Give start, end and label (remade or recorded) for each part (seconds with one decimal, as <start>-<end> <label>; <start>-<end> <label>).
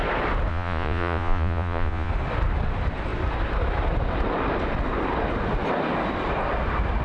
0.0-0.5 recorded; 0.5-2.1 remade; 2.1-7.0 recorded